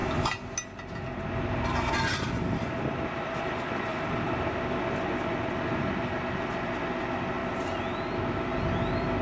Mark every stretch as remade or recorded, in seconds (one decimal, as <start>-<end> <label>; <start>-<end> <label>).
0.0-1.9 recorded; 1.9-3.9 remade; 3.9-6.0 recorded; 6.0-7.4 remade; 7.4-8.2 recorded; 8.2-9.2 remade